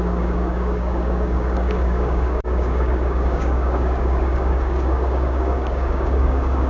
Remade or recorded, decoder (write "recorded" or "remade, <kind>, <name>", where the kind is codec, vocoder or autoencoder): remade, codec, DAC